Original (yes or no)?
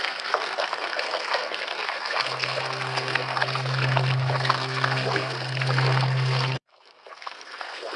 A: no